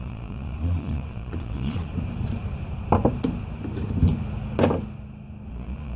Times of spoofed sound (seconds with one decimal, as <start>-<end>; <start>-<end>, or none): 0.0-1.9; 5.5-6.0